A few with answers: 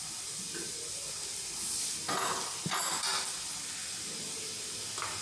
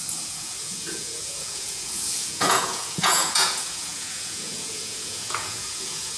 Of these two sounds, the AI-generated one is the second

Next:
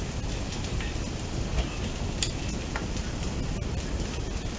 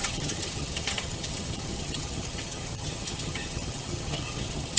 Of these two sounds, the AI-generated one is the second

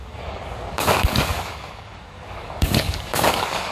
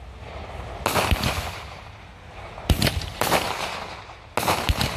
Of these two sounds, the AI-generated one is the first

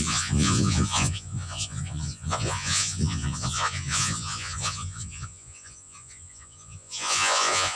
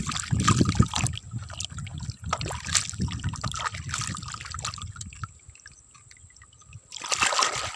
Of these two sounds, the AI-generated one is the first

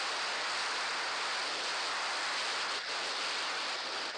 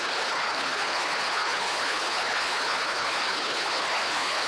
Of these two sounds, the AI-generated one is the second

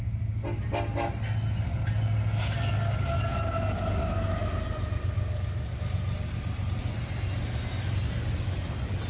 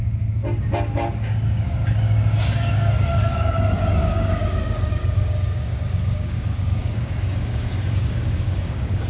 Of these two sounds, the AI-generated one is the second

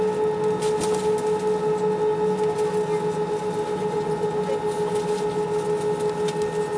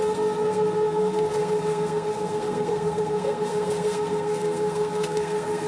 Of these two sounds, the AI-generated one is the second